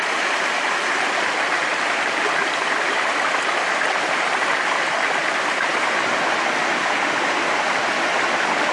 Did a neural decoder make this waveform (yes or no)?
no